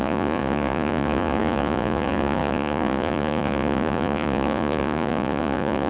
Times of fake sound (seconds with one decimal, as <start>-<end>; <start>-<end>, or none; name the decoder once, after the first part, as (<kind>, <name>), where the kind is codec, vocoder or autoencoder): 0.0-5.9 (vocoder, Vocos)